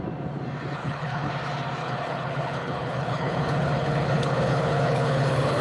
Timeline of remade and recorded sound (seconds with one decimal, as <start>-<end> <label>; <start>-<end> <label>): 0.0-0.8 recorded; 0.8-1.3 remade; 1.3-1.8 recorded; 1.8-5.6 remade